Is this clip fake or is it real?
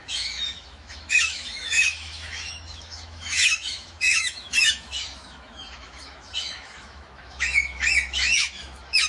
fake